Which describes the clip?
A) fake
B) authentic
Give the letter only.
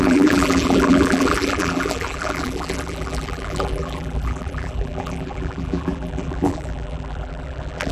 A